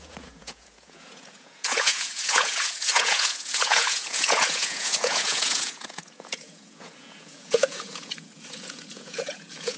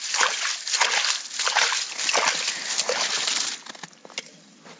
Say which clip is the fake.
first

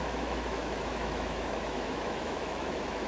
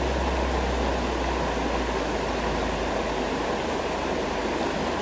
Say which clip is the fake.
first